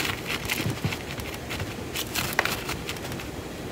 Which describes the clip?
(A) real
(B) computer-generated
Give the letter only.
A